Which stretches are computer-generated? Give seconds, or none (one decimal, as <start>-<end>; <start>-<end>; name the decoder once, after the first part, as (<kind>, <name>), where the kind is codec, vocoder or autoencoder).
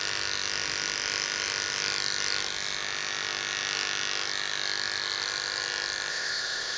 6.1-6.8 (codec, ZipCodec)